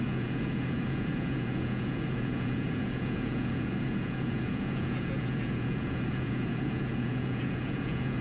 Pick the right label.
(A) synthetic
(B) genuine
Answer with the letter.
A